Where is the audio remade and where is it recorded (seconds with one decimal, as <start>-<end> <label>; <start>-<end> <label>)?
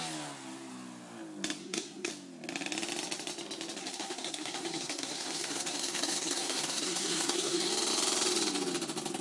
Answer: 0.0-1.6 recorded; 1.6-2.1 remade; 2.1-3.8 recorded; 3.8-7.7 remade; 7.7-9.2 recorded